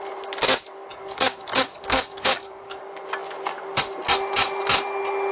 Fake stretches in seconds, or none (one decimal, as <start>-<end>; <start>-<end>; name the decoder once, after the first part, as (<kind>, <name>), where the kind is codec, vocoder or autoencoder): 0.9-2.8 (codec, DAC)